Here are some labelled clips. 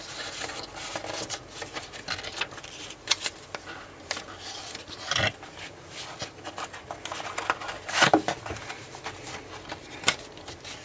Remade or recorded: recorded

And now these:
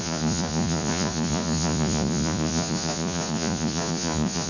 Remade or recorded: remade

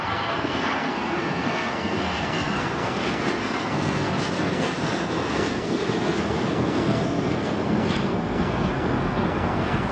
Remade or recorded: remade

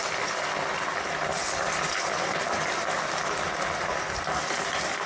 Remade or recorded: recorded